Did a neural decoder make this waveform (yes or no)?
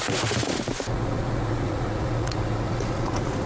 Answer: yes